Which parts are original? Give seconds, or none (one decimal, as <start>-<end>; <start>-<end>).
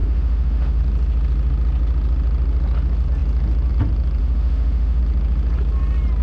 0.8-4.2; 5.0-6.2